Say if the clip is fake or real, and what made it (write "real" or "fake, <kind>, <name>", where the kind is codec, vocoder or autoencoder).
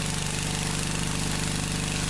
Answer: real